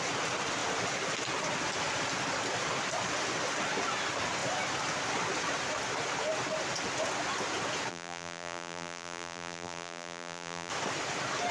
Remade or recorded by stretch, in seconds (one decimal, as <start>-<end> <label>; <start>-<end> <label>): 0.0-7.9 recorded; 7.9-10.7 remade; 10.7-11.5 recorded